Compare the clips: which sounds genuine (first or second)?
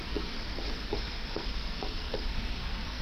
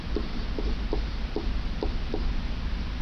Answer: second